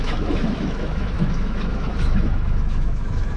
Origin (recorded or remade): remade